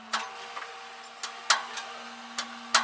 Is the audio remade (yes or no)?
no